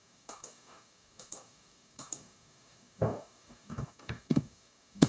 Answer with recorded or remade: remade